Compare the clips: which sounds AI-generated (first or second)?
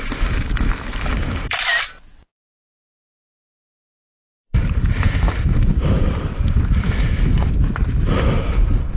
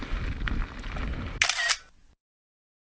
first